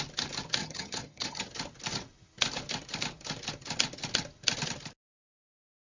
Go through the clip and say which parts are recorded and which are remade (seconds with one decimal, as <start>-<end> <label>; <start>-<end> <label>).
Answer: 0.0-0.6 recorded; 0.6-1.5 remade; 1.5-5.9 recorded